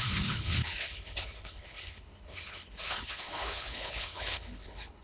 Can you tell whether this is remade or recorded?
remade